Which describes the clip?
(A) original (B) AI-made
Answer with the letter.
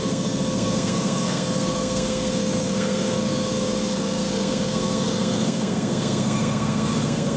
B